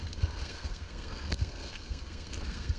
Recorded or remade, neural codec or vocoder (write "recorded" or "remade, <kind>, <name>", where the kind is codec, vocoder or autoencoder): remade, codec, SNAC